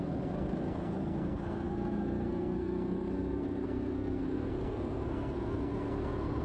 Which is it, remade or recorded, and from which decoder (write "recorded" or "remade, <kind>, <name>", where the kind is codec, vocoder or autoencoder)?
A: remade, codec, SNAC